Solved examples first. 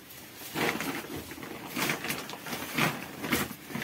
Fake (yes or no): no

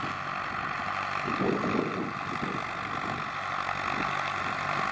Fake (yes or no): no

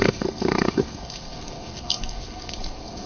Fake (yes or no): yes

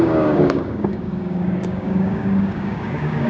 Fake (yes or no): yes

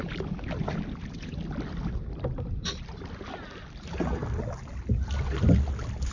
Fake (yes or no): no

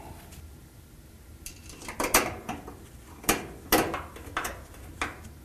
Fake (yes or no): no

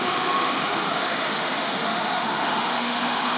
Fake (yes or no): yes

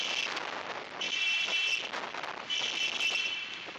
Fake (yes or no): no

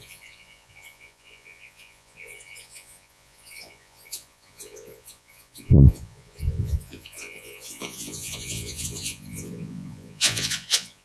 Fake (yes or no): yes